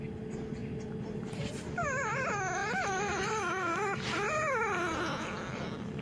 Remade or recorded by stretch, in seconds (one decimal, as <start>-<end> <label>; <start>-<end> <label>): 0.0-0.6 recorded; 0.6-1.5 remade; 1.5-6.0 recorded